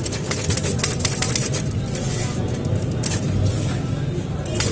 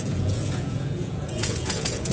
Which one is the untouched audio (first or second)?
first